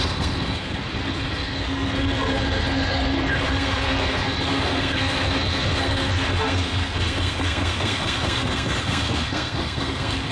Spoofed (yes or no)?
yes